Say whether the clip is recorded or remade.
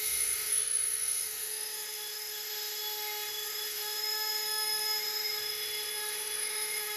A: remade